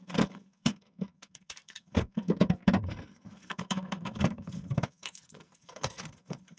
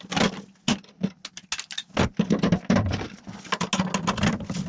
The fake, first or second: first